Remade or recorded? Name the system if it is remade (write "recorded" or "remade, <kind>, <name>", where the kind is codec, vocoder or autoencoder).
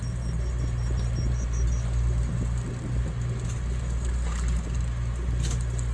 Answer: recorded